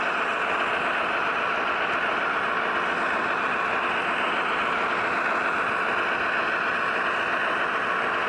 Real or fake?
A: real